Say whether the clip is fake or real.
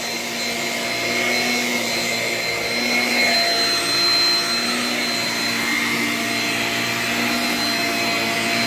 real